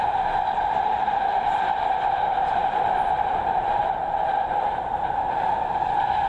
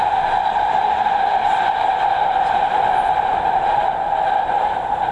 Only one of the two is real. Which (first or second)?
second